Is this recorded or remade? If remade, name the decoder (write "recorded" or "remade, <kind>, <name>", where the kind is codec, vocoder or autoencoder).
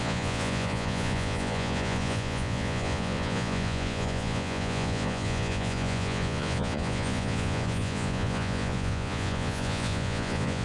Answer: remade, vocoder, Vocos